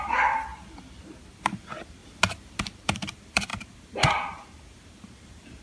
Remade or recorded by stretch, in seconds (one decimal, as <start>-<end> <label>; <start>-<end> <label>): 0.0-0.5 remade; 0.5-1.3 recorded; 1.3-2.0 remade; 2.0-2.6 recorded; 2.6-5.6 remade